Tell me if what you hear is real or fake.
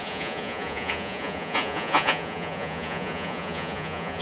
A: fake